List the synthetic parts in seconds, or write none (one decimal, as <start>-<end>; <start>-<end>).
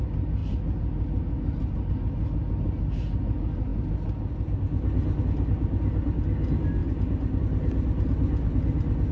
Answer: none